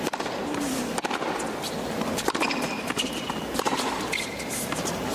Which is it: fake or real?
fake